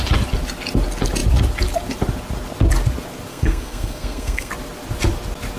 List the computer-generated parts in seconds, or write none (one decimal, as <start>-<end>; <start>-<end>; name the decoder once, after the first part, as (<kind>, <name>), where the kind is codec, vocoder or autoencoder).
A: 3.3-4.5 (codec, SNAC)